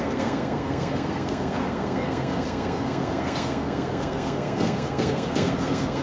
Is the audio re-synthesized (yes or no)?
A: yes